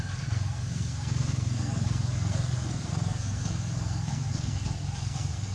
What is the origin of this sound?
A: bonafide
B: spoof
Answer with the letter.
B